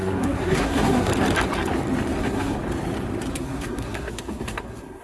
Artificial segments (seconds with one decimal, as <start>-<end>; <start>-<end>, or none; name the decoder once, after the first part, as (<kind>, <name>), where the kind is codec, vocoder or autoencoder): 0.0-1.1 (codec, SNAC); 2.2-2.6; 3.3-5.0